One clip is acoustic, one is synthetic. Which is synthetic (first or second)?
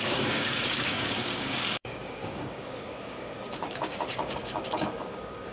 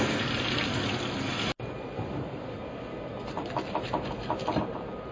first